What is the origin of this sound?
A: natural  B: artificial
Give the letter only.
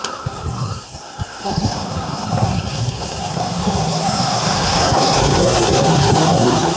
B